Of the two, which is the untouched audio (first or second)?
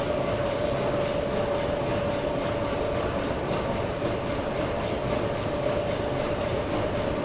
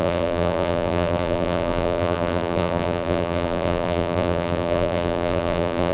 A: first